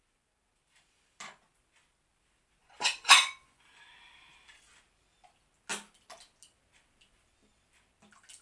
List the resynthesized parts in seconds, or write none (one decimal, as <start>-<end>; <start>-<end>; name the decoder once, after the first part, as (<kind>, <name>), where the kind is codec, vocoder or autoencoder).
2.6-3.8 (vocoder, Vocos)